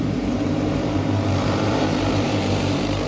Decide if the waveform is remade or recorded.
remade